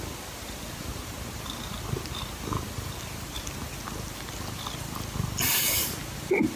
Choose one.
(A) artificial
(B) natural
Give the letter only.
A